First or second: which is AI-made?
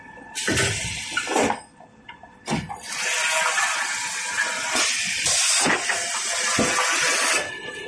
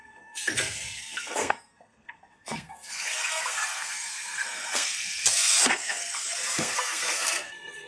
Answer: second